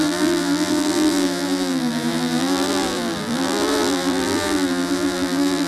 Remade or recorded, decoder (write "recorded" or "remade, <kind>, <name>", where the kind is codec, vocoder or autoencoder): remade, vocoder, BigVGAN v2